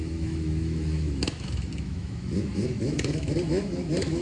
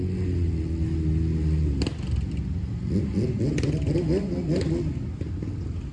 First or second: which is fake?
first